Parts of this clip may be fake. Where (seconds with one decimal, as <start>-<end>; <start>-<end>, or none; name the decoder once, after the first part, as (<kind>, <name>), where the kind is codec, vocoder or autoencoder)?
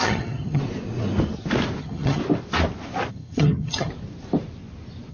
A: 0.0-0.6 (vocoder, HiFi-GAN); 1.8-2.2; 3.1-3.9